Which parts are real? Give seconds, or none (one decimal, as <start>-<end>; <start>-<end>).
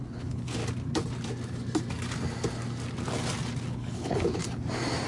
0.6-3.7; 4.4-5.1